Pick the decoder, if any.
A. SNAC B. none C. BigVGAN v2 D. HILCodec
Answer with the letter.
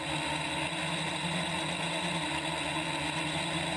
B